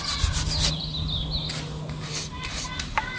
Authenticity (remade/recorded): recorded